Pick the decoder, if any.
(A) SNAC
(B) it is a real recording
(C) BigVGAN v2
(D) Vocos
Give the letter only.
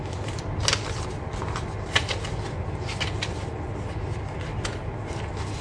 B